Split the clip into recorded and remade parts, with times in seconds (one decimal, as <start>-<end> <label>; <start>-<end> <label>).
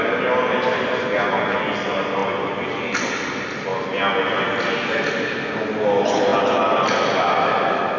0.0-8.0 recorded